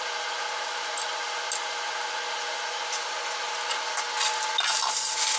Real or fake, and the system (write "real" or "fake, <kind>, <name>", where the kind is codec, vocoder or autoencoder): real